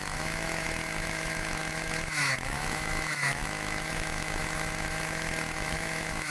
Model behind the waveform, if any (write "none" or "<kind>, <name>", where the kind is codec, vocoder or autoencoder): autoencoder, DAC-VAE